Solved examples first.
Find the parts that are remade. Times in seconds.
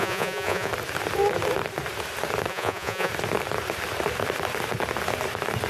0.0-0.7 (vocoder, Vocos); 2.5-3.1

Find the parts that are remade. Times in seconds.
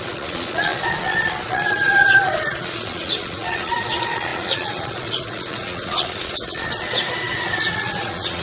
0.0-8.4 (vocoder, Vocos)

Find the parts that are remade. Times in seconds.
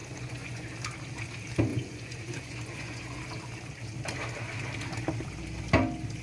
0.0-0.7 (vocoder, Vocos); 1.7-3.2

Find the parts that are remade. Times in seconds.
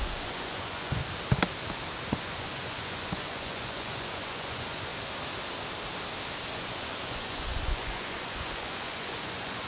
0.0-1.0 (vocoder, Vocos); 2.1-4.9; 6.5-9.7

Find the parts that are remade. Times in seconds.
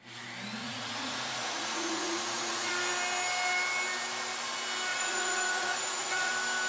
0.6-2.7 (vocoder, Vocos); 4.9-6.3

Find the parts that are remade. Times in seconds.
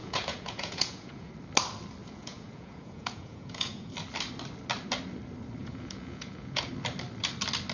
0.0-1.3 (vocoder, Vocos); 2.0-3.9; 5.6-6.7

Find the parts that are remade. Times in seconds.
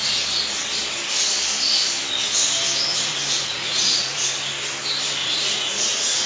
2.9-4.3 (vocoder, Vocos); 5.2-6.3